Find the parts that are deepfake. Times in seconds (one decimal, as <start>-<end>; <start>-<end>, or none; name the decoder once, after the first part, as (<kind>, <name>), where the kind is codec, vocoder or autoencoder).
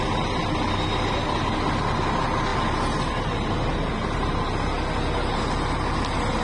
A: none